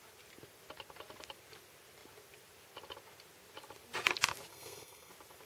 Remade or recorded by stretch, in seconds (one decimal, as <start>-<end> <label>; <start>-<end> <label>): 0.0-4.5 recorded; 4.5-5.1 remade; 5.1-5.5 recorded